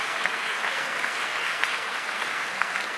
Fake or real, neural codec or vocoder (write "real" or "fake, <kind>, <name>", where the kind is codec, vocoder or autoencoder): fake, codec, SNAC